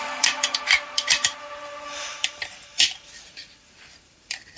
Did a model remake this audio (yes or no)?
yes